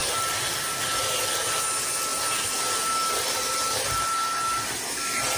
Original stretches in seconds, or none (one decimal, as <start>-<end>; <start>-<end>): 0.0-5.4